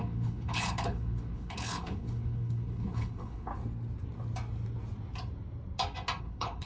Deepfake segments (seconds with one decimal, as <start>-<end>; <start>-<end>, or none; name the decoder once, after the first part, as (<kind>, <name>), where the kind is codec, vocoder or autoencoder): 0.0-3.5 (codec, HILCodec); 6.2-6.7